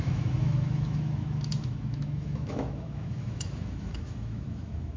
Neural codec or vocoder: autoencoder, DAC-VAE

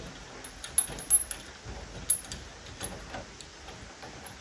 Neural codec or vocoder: none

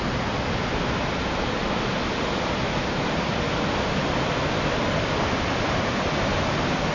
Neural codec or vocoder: none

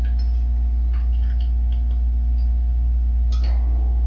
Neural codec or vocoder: none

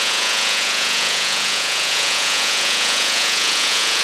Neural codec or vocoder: vocoder, Vocos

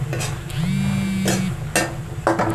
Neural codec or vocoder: none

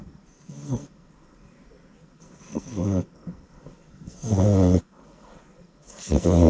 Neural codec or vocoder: codec, SNAC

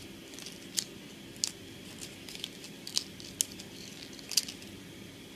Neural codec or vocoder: none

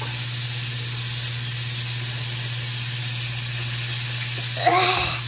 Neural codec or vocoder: none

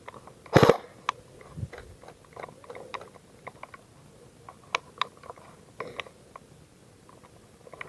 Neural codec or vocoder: none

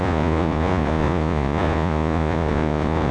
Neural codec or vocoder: vocoder, Vocos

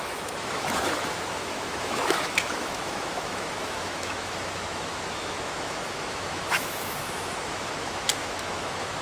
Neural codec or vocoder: autoencoder, DAC-VAE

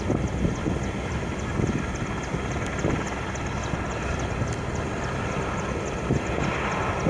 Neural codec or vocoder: none